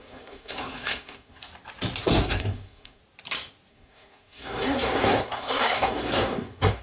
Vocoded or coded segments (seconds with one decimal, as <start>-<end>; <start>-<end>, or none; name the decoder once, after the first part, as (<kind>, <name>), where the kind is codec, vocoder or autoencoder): 0.0-1.5 (codec, SNAC); 2.0-3.0; 3.7-6.8